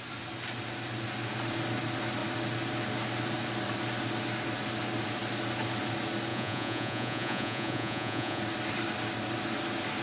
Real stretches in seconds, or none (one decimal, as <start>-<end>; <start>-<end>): 0.0-6.3; 8.4-10.0

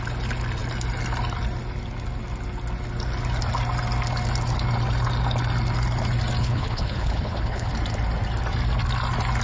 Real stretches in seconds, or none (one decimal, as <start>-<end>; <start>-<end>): 0.0-6.4; 7.7-9.4

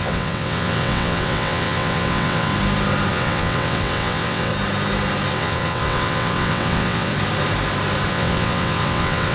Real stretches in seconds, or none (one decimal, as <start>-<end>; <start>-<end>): 2.5-3.1; 4.5-5.3; 7.1-8.1